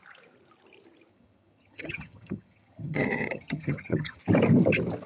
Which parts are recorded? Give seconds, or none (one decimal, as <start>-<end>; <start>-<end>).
0.0-1.1; 4.2-5.1